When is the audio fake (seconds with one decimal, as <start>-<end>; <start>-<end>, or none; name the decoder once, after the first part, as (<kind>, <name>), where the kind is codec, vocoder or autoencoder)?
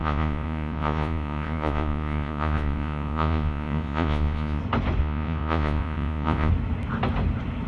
0.0-4.6 (vocoder, Vocos); 5.0-6.5